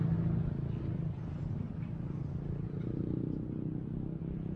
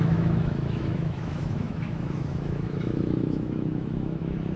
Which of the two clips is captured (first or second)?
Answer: first